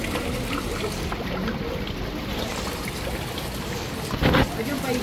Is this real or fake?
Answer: real